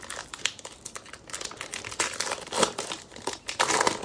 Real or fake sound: real